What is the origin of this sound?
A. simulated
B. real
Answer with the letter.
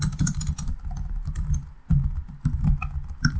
B